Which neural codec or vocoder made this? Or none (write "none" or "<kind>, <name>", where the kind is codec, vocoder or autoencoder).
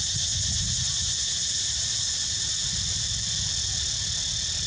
none